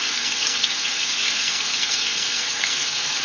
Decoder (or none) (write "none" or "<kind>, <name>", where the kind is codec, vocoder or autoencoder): codec, SNAC